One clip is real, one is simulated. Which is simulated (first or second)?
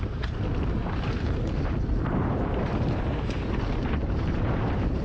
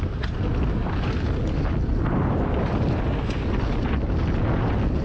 first